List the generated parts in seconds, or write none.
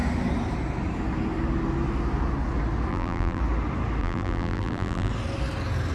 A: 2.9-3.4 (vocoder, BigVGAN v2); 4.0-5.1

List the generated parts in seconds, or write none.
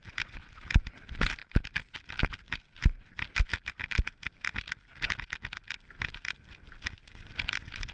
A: none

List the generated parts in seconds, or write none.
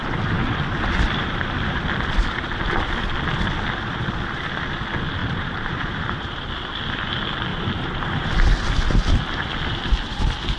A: 5.2-6.5 (vocoder, BigVGAN v2); 7.5-8.3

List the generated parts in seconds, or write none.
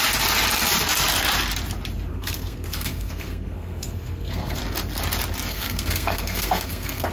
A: 2.1-4.6 (codec, SNAC); 5.5-7.1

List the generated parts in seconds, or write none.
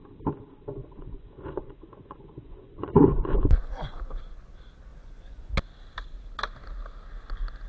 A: 0.8-4.0 (vocoder, Vocos); 4.9-5.5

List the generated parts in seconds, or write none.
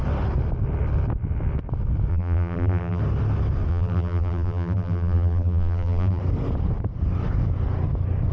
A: 2.1-3.0 (vocoder, BigVGAN v2); 3.7-6.2